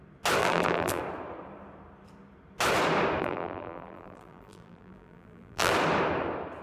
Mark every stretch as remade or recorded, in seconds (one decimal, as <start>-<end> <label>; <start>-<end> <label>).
0.0-0.4 recorded; 0.4-1.0 remade; 1.0-3.2 recorded; 3.2-5.7 remade; 5.7-6.6 recorded